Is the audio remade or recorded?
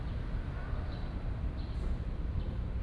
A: recorded